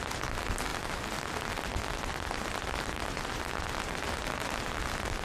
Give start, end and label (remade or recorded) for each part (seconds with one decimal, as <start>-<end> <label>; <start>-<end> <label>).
0.0-5.2 recorded